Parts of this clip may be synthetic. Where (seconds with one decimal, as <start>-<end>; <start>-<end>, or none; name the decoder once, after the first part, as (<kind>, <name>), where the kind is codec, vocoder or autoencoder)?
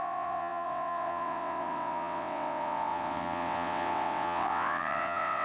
0.0-5.4 (vocoder, WaveNeXt)